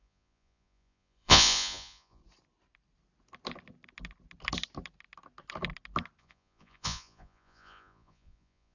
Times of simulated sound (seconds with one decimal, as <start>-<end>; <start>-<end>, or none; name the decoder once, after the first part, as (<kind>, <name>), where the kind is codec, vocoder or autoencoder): 0.0-2.2 (vocoder, Vocos); 6.2-8.7